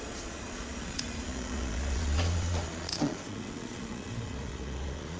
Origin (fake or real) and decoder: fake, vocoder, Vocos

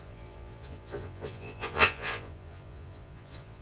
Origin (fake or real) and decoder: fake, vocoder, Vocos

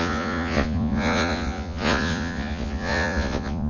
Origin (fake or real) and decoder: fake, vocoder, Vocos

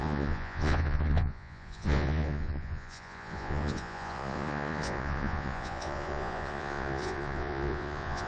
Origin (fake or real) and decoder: fake, vocoder, Vocos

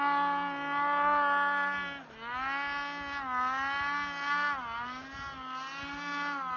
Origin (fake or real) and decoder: real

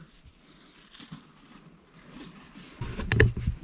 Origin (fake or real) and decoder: real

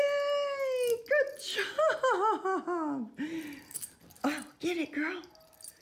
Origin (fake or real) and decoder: real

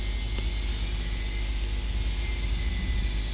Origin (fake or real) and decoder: real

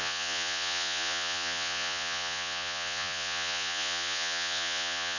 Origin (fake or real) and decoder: fake, vocoder, Vocos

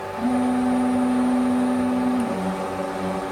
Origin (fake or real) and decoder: real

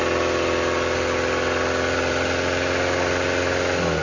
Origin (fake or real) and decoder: real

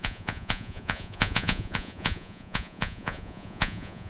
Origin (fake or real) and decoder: fake, vocoder, Vocos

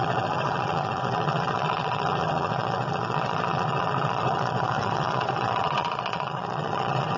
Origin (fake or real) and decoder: fake, vocoder, Vocos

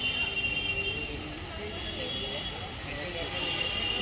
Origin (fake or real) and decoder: real